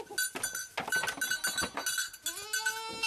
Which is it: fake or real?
real